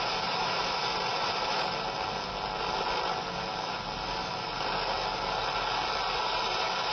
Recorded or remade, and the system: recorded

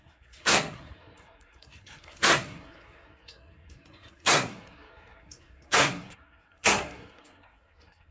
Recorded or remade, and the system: remade, codec, SNAC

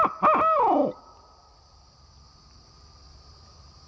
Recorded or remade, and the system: recorded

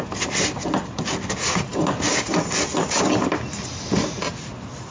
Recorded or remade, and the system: recorded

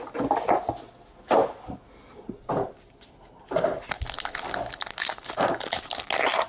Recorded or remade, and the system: recorded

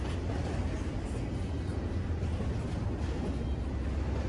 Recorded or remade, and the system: recorded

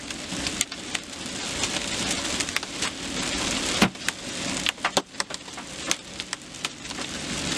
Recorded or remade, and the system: recorded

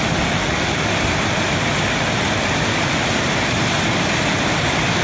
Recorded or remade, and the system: recorded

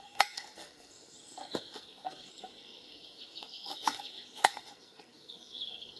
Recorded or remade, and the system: remade, codec, SNAC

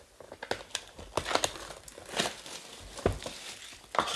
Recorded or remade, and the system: recorded